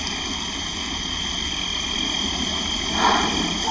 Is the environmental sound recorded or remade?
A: recorded